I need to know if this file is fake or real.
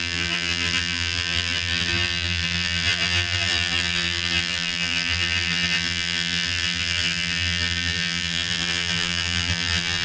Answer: fake